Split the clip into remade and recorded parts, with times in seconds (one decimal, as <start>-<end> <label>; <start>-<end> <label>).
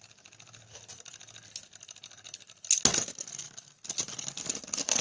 0.0-5.0 recorded